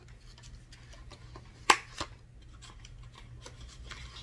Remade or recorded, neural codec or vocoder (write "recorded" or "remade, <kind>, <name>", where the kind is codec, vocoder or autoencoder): recorded